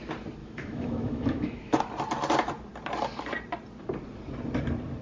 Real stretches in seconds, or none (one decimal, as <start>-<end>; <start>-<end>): 0.0-0.4; 1.8-5.0